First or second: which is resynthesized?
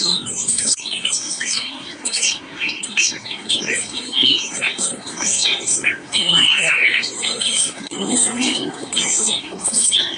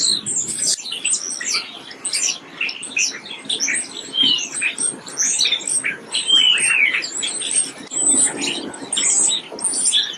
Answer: first